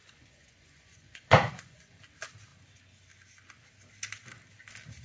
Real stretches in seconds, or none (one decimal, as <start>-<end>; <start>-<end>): 2.0-5.0

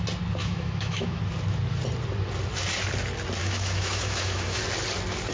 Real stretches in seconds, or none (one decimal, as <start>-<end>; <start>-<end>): 0.0-0.4; 1.2-3.4; 4.6-5.3

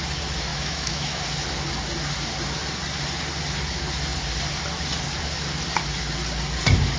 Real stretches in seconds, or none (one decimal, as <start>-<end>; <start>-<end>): 0.0-0.5; 1.2-7.0